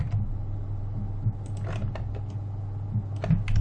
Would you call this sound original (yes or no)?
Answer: yes